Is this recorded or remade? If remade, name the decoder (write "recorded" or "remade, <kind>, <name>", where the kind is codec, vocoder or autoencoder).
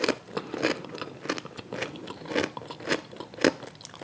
recorded